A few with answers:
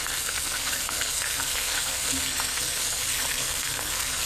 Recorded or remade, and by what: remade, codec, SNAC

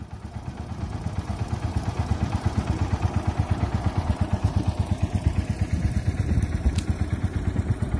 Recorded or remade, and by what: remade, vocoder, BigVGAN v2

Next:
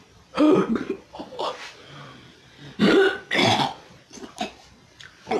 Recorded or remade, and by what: recorded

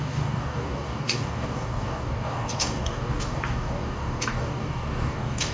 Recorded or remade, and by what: remade, codec, DAC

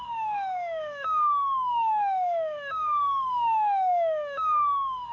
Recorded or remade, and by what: remade, autoencoder, DAC-VAE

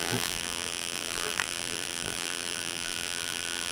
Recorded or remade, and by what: remade, vocoder, BigVGAN v2